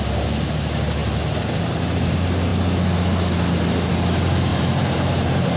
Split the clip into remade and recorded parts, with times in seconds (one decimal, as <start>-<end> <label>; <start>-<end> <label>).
0.0-4.5 recorded; 4.5-5.6 remade